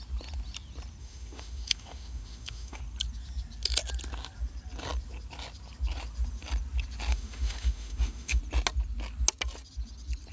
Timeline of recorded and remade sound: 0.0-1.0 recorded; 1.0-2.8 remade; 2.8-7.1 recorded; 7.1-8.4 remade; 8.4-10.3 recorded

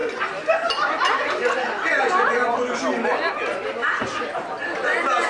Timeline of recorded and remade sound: 0.0-5.3 recorded